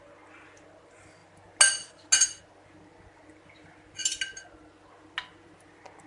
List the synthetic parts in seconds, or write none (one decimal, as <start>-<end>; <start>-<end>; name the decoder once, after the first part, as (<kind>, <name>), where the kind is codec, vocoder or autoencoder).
none